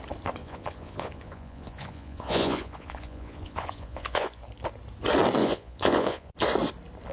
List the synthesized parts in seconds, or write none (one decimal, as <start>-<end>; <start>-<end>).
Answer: 0.4-4.4; 5.4-6.3